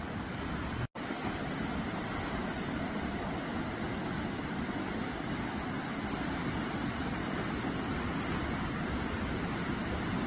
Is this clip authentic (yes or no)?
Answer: yes